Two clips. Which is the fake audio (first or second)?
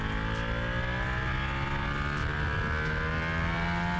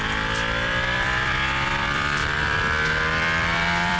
second